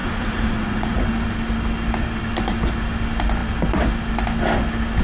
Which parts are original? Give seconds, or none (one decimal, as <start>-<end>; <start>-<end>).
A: 1.0-5.0